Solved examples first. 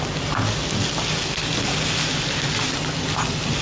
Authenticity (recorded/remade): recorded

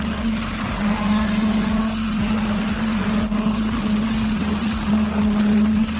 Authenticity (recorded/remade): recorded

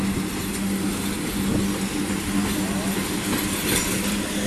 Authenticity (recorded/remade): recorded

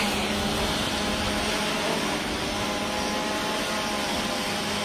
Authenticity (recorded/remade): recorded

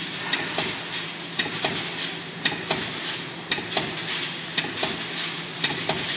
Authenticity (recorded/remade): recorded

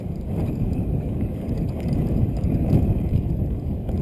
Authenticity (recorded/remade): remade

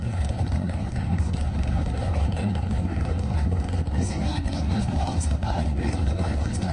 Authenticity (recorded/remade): remade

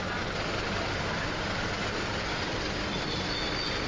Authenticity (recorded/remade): recorded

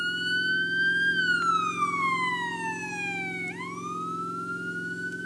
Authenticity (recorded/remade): recorded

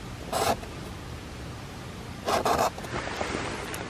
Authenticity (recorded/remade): recorded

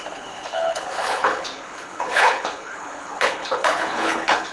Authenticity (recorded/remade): remade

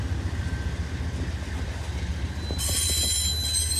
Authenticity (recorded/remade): recorded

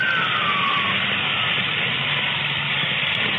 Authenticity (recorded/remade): recorded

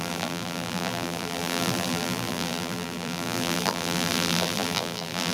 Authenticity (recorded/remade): remade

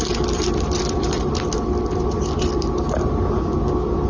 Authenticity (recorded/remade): recorded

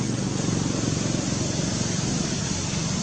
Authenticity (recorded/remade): recorded